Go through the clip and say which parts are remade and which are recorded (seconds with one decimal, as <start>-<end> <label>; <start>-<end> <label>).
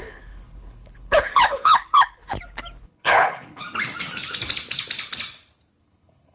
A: 0.0-2.3 remade; 2.3-2.8 recorded; 2.8-3.6 remade; 3.6-5.8 recorded; 5.8-6.3 remade